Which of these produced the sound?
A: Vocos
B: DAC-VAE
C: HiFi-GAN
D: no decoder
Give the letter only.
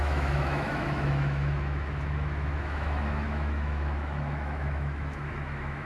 B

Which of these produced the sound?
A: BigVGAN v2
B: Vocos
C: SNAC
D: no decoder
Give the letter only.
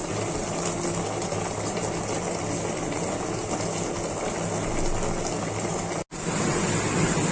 D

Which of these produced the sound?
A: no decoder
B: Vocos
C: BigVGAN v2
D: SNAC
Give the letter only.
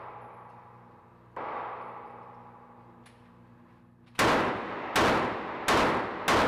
A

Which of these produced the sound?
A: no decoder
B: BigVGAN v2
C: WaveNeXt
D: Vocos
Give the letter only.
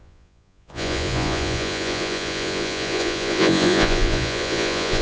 D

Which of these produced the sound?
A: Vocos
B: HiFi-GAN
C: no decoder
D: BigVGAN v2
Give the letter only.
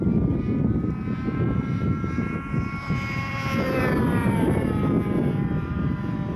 D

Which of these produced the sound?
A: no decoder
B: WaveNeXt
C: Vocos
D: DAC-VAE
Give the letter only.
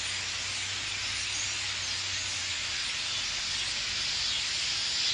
A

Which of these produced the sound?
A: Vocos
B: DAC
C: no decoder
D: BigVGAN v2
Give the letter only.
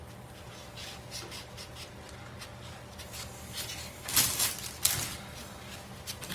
C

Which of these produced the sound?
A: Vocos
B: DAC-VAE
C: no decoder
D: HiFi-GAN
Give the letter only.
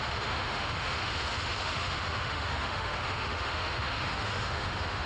B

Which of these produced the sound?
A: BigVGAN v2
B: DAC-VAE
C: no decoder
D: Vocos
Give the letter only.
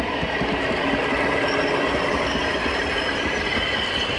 C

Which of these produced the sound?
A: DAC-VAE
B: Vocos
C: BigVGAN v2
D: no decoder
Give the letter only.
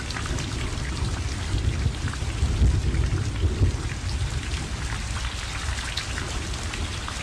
D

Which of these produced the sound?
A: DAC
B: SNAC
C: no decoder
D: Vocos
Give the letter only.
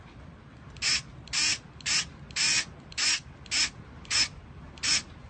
C